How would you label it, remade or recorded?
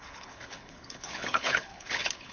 remade